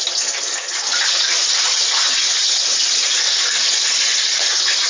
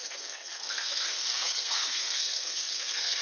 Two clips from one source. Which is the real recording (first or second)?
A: first